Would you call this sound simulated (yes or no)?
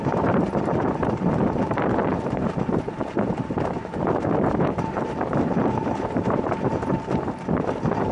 yes